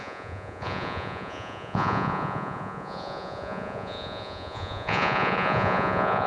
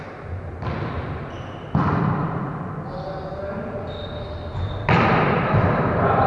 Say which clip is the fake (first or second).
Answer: first